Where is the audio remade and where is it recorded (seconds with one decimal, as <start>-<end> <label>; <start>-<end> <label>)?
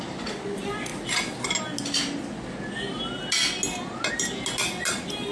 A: 0.0-5.3 recorded